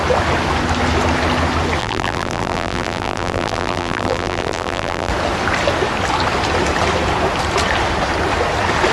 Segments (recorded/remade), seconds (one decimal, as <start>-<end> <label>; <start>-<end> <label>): 0.0-1.8 recorded; 1.8-5.1 remade; 5.1-8.9 recorded